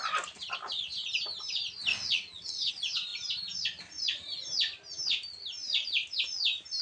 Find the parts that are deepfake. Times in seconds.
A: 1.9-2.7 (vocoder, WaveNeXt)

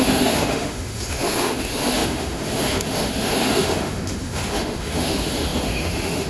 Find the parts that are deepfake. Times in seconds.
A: 0.0-6.3 (autoencoder, DAC-VAE)

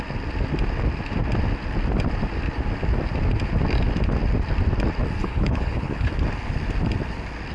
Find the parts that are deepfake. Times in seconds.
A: 5.2-6.1 (codec, HILCodec)